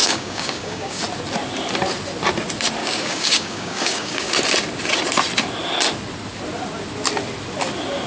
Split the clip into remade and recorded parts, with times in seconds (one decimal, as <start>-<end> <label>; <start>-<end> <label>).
0.0-1.0 remade; 1.0-2.8 recorded; 2.8-4.3 remade; 4.3-8.1 recorded